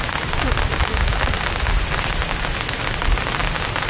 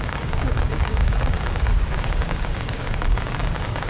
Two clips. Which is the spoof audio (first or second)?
second